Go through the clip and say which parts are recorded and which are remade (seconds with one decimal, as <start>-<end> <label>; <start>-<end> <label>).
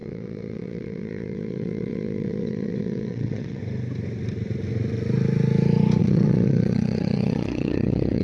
0.0-3.6 remade; 3.6-6.0 recorded; 6.0-8.2 remade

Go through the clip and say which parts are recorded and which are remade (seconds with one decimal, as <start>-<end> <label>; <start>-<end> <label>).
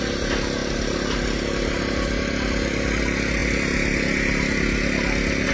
0.0-5.5 recorded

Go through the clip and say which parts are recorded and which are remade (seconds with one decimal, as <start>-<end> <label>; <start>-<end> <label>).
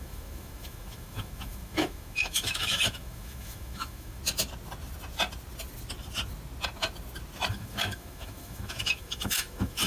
0.0-4.2 remade; 4.2-7.5 recorded; 7.5-9.9 remade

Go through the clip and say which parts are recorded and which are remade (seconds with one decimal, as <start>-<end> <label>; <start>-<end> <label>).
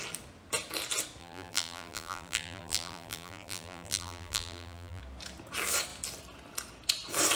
0.0-1.2 recorded; 1.2-5.0 remade; 5.0-7.4 recorded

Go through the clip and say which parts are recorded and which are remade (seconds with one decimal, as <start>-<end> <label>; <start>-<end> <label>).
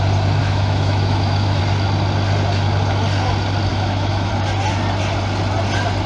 0.0-0.4 recorded; 0.4-1.6 remade; 1.6-3.7 recorded; 3.7-4.3 remade; 4.3-6.1 recorded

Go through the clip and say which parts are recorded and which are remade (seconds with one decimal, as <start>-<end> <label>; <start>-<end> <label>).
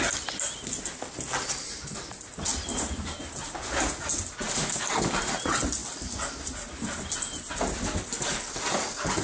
0.0-9.2 recorded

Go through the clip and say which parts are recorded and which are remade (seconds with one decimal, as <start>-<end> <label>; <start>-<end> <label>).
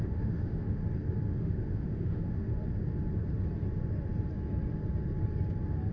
0.0-0.8 remade; 0.8-1.4 recorded; 1.4-2.5 remade; 2.5-5.9 recorded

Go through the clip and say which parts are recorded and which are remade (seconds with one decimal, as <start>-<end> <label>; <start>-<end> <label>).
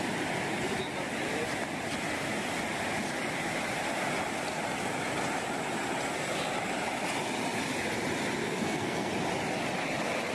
0.0-8.4 recorded; 8.4-9.1 remade; 9.1-10.3 recorded